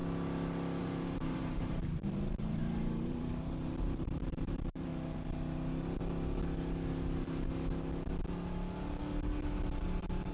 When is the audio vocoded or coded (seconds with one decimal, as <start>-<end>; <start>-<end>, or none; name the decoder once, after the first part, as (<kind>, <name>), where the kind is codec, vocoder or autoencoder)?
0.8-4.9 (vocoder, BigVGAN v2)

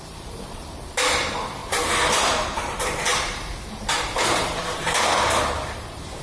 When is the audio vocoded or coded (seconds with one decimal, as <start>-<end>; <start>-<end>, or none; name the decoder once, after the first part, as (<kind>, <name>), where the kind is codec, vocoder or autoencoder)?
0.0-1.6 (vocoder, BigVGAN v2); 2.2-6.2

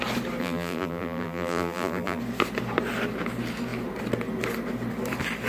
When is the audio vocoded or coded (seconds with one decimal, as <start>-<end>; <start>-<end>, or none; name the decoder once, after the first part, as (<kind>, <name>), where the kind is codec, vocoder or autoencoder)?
0.4-2.2 (vocoder, BigVGAN v2)